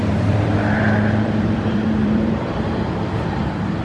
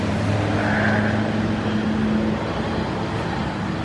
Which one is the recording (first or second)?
second